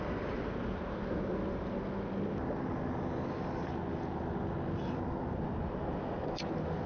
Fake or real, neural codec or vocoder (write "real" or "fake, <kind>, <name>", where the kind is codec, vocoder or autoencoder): real